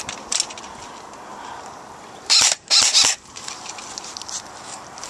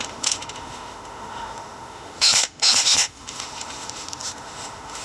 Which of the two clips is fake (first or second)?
second